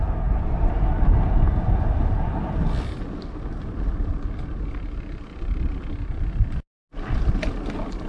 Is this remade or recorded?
recorded